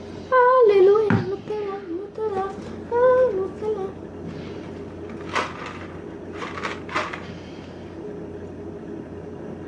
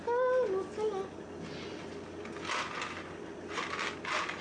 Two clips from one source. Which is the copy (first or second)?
first